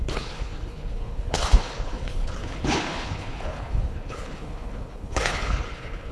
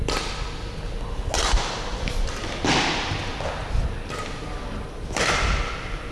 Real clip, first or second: second